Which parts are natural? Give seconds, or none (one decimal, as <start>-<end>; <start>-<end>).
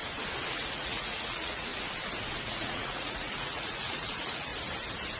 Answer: 0.0-0.5; 1.7-2.4; 4.5-5.2